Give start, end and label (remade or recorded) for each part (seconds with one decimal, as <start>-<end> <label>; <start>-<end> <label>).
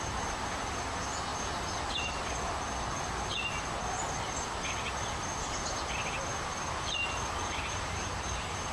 0.0-8.7 recorded